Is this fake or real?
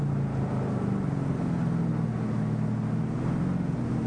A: real